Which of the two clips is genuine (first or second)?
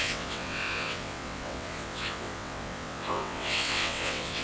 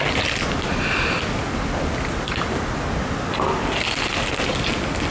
second